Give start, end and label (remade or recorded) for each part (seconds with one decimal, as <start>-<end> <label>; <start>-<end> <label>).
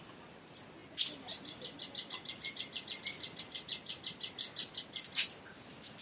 0.0-6.0 recorded